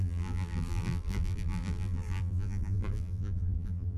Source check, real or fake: fake